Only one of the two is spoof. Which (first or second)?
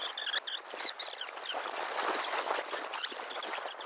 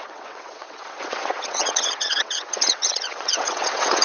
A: second